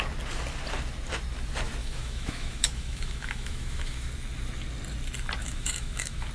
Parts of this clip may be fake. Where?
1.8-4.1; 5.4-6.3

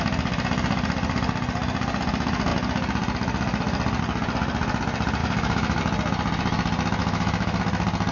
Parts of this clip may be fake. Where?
5.2-5.8; 7.0-7.6